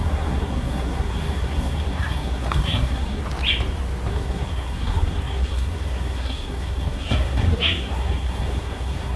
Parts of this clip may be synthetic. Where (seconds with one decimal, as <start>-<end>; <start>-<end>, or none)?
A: 0.0-3.2; 4.1-9.2